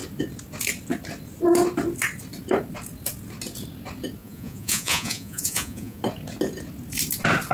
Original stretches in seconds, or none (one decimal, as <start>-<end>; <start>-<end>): 0.0-4.2; 6.0-7.5